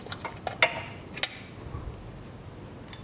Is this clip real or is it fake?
real